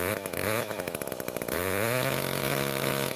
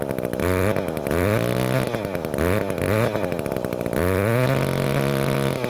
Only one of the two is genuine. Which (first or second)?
second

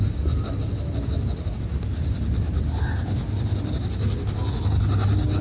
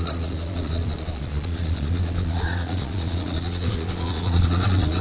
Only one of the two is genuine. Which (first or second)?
first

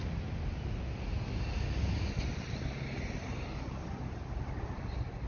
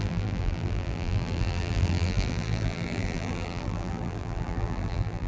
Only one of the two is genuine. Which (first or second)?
first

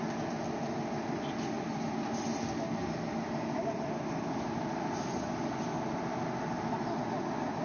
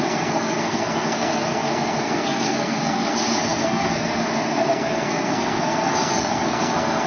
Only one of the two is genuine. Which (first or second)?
first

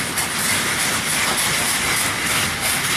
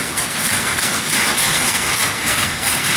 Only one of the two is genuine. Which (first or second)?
first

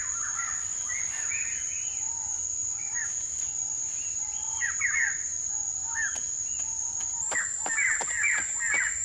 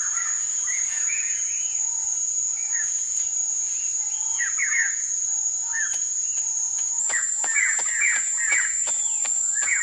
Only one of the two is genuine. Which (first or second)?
first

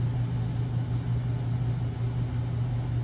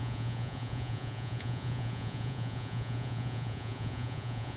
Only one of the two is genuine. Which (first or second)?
first